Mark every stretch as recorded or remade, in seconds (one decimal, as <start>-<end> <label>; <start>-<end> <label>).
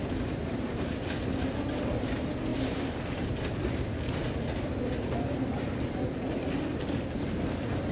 0.0-7.9 remade